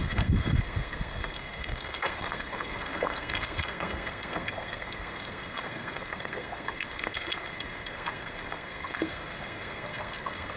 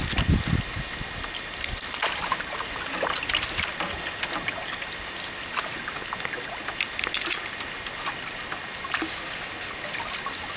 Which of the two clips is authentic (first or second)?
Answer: second